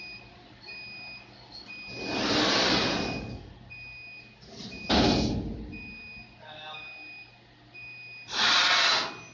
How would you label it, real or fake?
real